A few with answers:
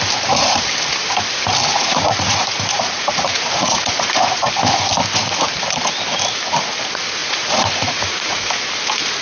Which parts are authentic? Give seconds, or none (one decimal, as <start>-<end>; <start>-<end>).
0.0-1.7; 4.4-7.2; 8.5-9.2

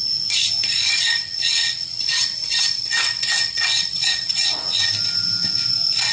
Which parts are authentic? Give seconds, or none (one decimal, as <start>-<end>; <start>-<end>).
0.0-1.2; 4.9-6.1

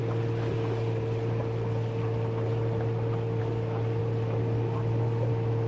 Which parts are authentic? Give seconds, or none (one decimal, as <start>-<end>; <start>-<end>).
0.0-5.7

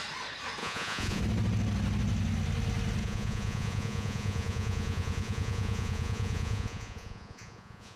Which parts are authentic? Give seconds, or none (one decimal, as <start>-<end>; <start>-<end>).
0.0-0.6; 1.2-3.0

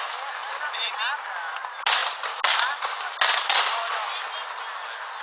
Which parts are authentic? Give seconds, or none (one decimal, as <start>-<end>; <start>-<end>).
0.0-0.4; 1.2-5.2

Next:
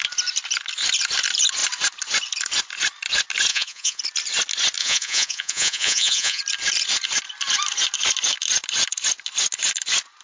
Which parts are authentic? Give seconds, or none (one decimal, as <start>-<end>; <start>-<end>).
0.0-3.5; 4.0-4.8; 6.4-10.2

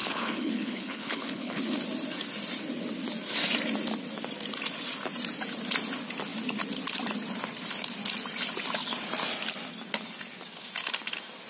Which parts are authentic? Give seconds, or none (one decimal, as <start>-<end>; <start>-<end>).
1.6-11.5

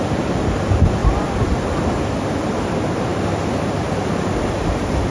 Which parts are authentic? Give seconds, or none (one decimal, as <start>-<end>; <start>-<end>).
0.0-5.1